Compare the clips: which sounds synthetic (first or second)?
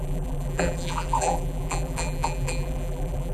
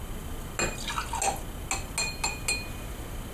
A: first